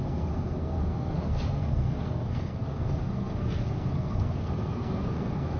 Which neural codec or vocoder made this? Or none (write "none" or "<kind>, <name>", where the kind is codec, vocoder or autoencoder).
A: codec, SNAC